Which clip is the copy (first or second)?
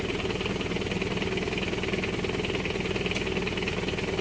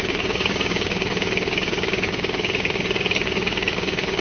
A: second